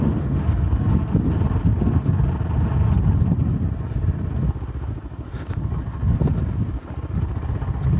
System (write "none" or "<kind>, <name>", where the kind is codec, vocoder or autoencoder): none